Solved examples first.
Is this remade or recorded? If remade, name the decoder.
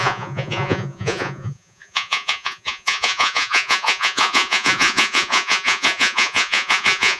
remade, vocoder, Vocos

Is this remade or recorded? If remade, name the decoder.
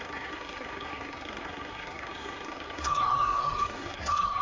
remade, codec, SNAC